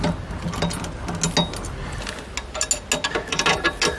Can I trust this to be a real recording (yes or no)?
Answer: yes